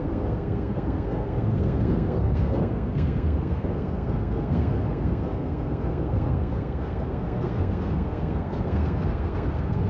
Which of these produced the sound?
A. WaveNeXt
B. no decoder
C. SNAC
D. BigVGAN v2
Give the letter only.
C